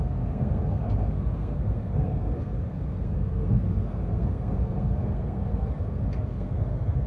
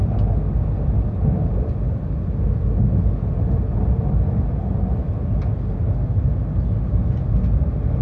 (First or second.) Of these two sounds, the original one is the second